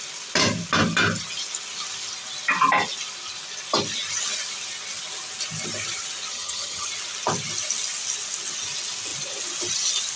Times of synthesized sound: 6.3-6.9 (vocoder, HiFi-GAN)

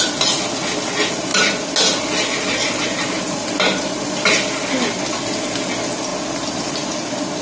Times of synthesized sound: none

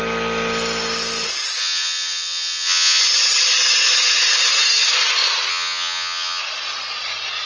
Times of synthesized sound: 1.6-3.0 (vocoder, HiFi-GAN); 5.5-6.4

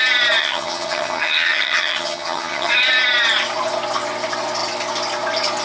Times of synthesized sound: 0.4-2.7 (vocoder, HiFi-GAN)

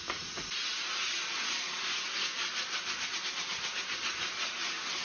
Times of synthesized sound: none

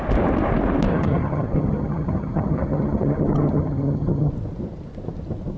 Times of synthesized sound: 0.9-4.3 (vocoder, HiFi-GAN)

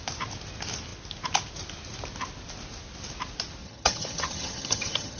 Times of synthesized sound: 3.6-5.2 (vocoder, HiFi-GAN)

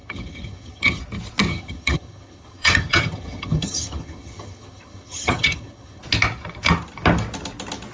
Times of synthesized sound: 0.0-1.0 (vocoder, HiFi-GAN); 1.5-6.0